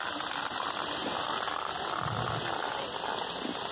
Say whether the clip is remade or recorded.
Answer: recorded